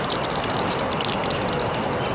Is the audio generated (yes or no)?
no